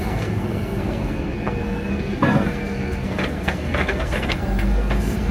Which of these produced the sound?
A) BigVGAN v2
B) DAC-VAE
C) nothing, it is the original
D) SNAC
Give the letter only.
D